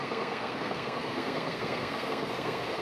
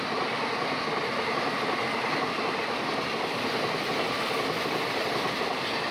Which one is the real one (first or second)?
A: second